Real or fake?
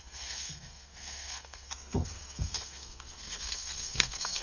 fake